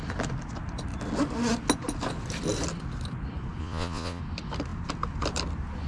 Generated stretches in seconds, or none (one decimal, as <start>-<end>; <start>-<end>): 3.6-4.2